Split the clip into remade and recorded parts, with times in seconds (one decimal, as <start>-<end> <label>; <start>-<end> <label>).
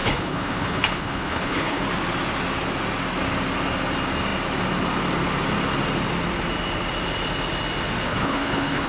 0.0-1.8 remade; 1.8-8.1 recorded; 8.1-8.9 remade